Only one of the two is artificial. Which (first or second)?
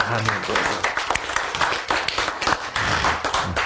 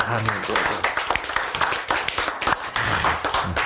second